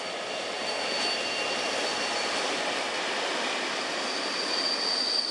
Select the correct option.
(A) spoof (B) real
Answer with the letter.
B